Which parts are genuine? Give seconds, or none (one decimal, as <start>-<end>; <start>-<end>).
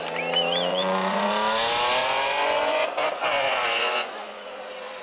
0.0-0.7; 1.3-2.0